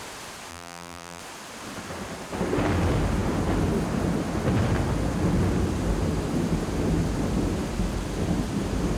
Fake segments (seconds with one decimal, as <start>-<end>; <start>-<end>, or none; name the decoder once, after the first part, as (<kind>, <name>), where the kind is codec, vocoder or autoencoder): 0.5-1.2 (vocoder, BigVGAN v2)